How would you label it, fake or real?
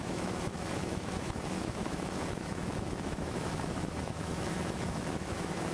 fake